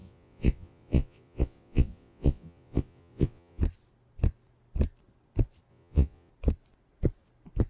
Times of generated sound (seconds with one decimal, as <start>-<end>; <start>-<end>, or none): 0.0-3.6; 5.7-6.3